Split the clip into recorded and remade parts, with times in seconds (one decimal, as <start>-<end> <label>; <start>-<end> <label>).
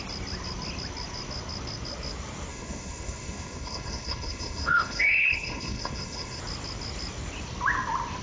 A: 0.0-2.5 recorded; 2.5-6.4 remade; 6.4-8.2 recorded